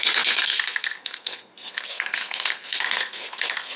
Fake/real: fake